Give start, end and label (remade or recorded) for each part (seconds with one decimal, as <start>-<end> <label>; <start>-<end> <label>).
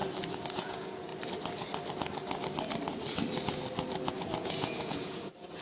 0.0-0.5 recorded; 0.5-1.1 remade; 1.1-4.1 recorded; 4.1-5.6 remade